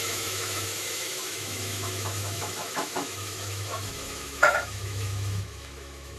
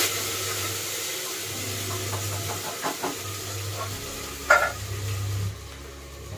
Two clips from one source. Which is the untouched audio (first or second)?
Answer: second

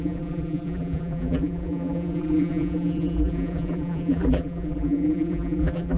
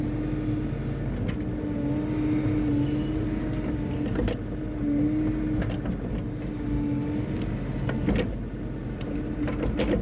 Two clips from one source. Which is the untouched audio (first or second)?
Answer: second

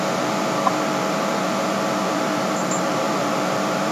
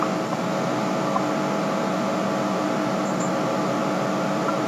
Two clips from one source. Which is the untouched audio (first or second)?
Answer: second